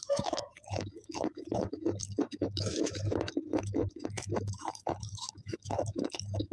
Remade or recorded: remade